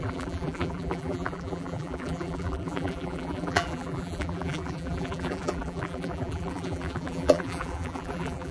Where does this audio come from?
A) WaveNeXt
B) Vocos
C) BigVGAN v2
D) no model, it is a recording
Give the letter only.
C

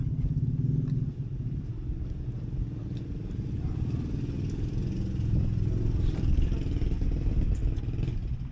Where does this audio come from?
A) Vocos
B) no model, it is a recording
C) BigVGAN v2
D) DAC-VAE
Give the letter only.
B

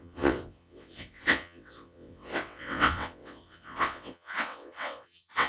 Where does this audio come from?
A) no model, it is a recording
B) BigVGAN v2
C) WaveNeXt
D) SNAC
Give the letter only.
C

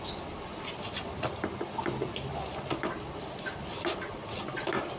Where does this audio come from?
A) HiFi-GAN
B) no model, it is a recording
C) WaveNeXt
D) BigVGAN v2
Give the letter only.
B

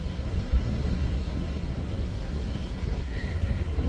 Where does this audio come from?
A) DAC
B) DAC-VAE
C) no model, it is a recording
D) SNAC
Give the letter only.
D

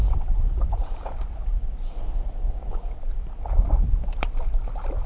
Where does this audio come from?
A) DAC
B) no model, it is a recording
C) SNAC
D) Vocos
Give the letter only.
B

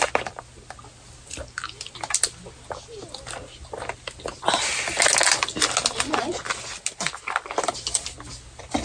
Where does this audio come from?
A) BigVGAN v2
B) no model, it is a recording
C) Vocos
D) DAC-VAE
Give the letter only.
B